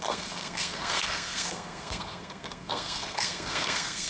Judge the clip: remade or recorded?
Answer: remade